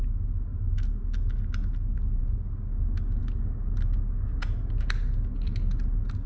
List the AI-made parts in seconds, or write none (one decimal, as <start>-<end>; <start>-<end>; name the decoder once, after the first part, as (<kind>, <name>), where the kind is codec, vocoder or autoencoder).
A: none